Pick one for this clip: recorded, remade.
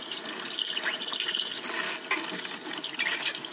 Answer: recorded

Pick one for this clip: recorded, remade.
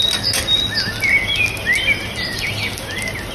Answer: recorded